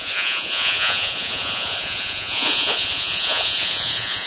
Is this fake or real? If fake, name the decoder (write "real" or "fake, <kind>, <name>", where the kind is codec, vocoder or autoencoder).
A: fake, vocoder, Vocos